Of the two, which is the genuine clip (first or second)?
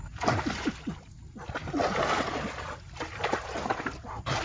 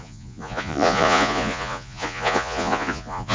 first